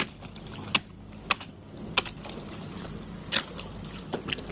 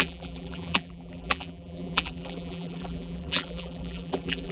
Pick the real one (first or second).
first